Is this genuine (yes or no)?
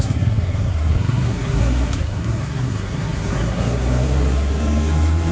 no